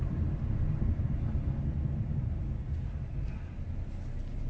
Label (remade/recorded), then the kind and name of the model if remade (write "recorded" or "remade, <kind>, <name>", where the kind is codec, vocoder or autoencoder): recorded